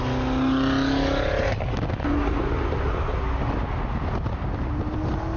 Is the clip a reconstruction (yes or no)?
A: no